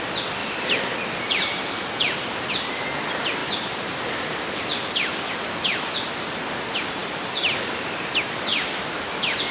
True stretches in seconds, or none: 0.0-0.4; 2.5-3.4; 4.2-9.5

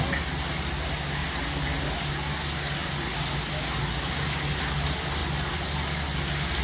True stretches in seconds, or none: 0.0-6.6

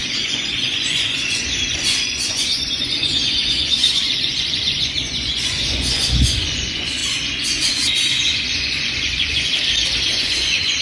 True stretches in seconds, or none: 9.5-10.1

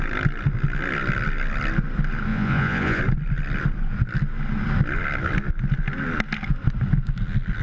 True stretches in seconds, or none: 0.0-2.3; 3.0-7.6

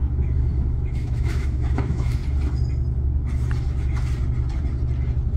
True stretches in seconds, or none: 2.2-5.4

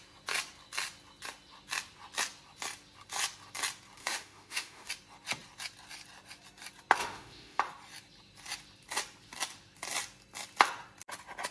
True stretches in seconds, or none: 0.0-4.0; 4.9-7.0; 7.6-11.5